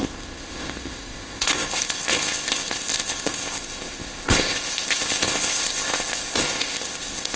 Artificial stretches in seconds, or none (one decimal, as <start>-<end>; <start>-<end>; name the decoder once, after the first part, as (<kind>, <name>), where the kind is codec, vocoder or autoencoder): 0.0-7.4 (codec, ZipCodec)